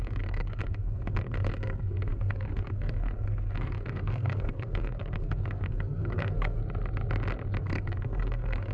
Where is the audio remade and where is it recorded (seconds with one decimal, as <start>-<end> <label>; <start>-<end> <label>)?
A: 0.0-6.6 remade; 6.6-7.6 recorded; 7.6-8.7 remade